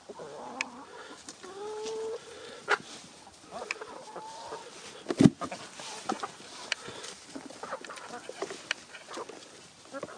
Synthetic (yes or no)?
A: no